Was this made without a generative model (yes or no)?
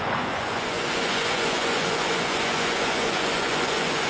no